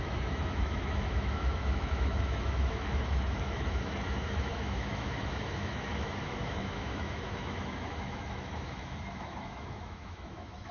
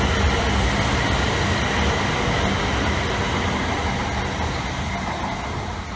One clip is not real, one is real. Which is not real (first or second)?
first